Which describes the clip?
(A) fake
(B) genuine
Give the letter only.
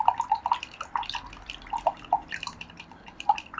B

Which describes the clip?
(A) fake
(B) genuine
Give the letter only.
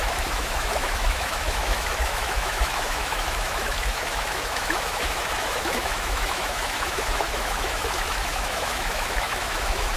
A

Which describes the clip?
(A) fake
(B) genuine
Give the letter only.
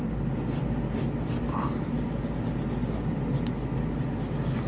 B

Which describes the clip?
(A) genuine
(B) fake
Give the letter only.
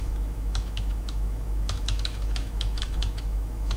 B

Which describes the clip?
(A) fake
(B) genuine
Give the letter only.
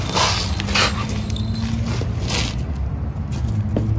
B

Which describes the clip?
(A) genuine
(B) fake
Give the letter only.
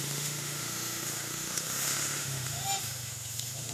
B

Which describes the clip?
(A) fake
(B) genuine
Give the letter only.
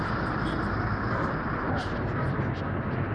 B